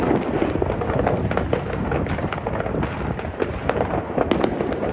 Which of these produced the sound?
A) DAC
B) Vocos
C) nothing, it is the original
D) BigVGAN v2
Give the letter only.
C